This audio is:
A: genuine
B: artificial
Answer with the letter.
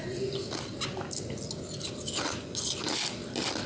A